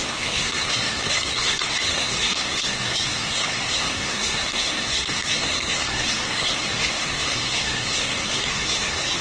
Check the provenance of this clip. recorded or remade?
remade